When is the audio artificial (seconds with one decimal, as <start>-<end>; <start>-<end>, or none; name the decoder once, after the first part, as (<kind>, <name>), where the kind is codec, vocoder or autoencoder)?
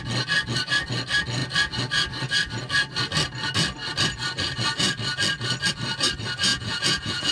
6.5-7.3 (vocoder, Vocos)